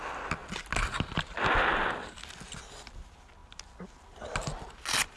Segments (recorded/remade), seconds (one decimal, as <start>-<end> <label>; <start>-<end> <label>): 0.0-5.2 recorded